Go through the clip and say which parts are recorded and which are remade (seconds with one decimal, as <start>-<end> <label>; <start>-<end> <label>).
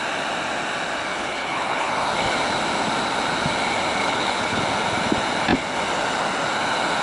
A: 0.0-1.1 recorded; 1.1-1.9 remade; 1.9-4.0 recorded; 4.0-4.6 remade; 4.6-7.0 recorded